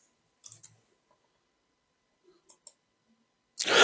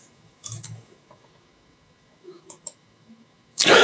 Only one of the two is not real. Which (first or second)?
second